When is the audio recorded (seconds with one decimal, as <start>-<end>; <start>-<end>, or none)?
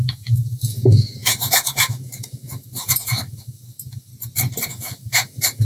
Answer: 4.1-4.7